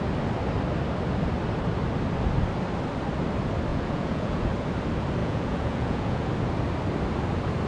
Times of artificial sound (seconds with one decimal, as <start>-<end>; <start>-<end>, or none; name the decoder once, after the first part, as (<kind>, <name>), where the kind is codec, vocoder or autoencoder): 3.7-4.5 (vocoder, Vocos); 5.2-6.3